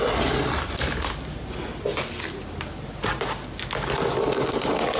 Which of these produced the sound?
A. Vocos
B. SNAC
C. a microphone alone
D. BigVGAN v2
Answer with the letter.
C